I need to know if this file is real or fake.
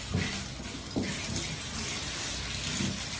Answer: real